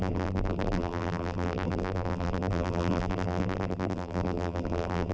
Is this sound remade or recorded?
remade